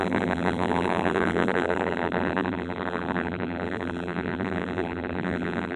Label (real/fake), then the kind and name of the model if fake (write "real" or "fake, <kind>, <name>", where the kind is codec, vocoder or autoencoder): fake, vocoder, BigVGAN v2